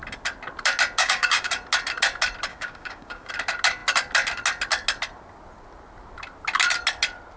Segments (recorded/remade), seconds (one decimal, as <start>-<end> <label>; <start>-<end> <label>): 0.0-1.0 recorded; 1.0-1.5 remade; 1.5-2.5 recorded; 2.5-3.3 remade; 3.3-7.4 recorded